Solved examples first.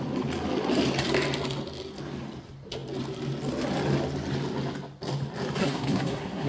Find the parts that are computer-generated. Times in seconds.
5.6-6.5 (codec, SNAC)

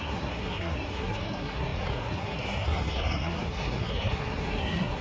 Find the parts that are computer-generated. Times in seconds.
0.0-5.0 (codec, SNAC)

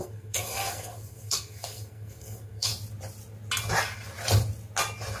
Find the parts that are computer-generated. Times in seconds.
0.0-2.7 (codec, SNAC)